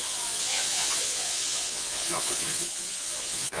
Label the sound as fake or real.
fake